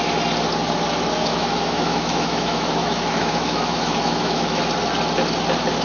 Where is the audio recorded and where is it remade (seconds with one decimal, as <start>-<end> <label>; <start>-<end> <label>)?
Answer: 0.0-1.1 recorded; 1.1-4.6 remade; 4.6-5.8 recorded